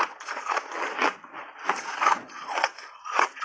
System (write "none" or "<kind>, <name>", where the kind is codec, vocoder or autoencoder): vocoder, Vocos